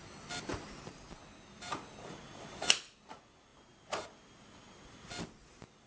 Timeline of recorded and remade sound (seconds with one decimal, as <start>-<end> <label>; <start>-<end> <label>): 0.0-0.5 recorded; 0.5-1.1 remade; 1.1-5.9 recorded